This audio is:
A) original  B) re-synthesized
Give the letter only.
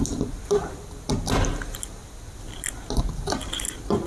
A